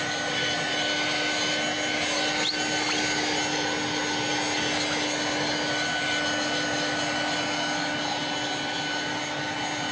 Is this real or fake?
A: real